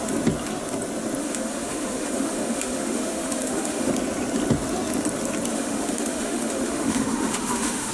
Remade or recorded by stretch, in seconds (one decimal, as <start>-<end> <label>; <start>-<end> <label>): 0.0-1.2 recorded; 1.2-3.9 remade; 3.9-5.5 recorded; 5.5-7.9 remade